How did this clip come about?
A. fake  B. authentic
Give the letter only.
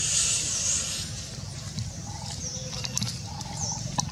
B